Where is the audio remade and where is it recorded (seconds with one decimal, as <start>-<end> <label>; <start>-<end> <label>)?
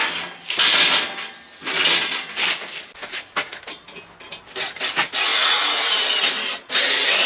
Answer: 0.0-5.3 recorded; 5.3-5.9 remade; 5.9-7.3 recorded